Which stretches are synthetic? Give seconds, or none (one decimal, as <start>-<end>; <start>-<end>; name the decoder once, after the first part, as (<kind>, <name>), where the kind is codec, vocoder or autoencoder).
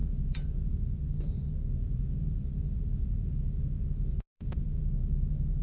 0.0-0.7 (vocoder, Vocos); 1.8-4.8